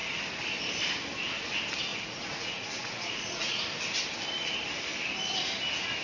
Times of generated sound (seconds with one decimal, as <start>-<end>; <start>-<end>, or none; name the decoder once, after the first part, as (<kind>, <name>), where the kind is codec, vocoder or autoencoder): 1.9-3.6 (vocoder, Vocos)